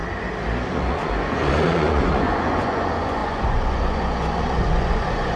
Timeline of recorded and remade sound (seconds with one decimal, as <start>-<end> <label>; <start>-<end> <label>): 0.0-0.7 recorded; 0.7-5.4 remade